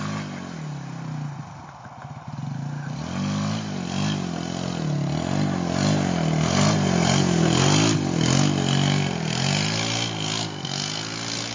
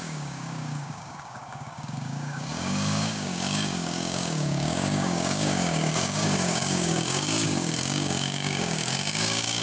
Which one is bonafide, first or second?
first